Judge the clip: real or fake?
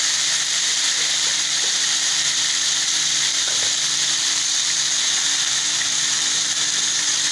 fake